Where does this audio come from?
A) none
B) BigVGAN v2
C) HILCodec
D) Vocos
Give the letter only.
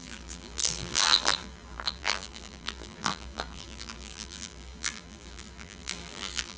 B